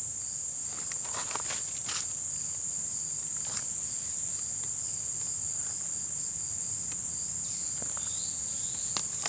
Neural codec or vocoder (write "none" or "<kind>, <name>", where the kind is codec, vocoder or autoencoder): none